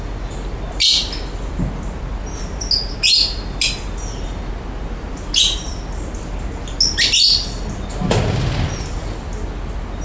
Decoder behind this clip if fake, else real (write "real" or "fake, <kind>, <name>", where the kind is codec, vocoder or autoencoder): real